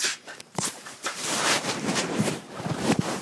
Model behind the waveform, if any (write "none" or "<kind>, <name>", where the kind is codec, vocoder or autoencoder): vocoder, BigVGAN v2